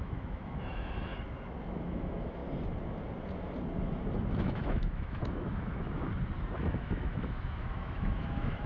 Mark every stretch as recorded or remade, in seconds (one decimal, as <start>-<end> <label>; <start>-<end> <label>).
0.0-1.1 remade; 1.1-1.7 recorded; 1.7-2.4 remade; 2.4-4.4 recorded; 4.4-6.0 remade; 6.0-6.6 recorded; 6.6-8.7 remade